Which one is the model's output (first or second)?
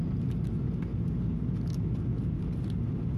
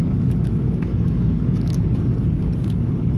second